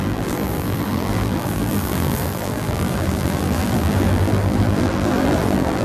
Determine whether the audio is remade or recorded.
remade